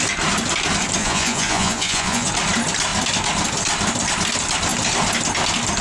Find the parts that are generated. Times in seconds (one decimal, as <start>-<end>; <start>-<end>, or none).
1.0-2.3